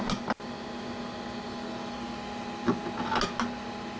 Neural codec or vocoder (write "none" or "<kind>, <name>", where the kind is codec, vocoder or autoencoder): none